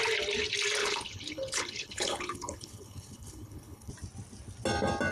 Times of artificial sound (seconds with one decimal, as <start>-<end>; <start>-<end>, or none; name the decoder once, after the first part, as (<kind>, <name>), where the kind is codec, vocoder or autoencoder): 0.8-3.9 (codec, HILCodec)